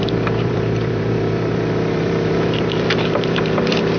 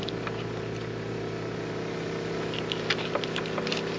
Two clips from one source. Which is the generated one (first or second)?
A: first